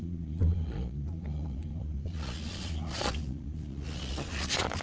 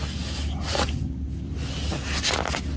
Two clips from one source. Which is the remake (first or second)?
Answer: first